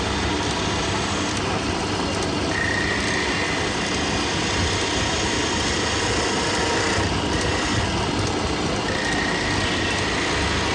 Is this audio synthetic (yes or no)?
no